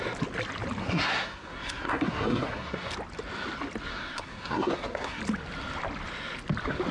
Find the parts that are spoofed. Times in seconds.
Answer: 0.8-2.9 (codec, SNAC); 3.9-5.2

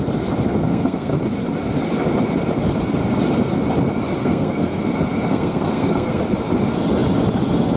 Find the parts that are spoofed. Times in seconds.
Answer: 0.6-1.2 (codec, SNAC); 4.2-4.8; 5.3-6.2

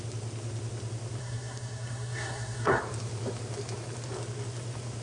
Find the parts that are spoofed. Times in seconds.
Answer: 1.2-2.8 (codec, SNAC)

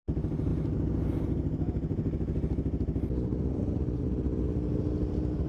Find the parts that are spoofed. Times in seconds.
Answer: none